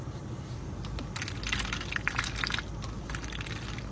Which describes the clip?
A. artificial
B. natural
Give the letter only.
B